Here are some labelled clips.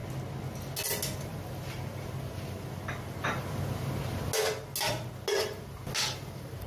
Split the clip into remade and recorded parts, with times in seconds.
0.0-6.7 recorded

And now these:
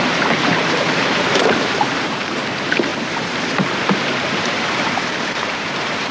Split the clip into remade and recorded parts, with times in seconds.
0.0-6.1 remade

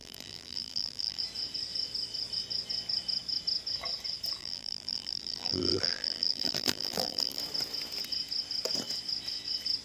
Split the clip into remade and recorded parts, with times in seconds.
0.0-1.2 remade; 1.2-4.4 recorded; 4.4-7.4 remade; 7.4-9.8 recorded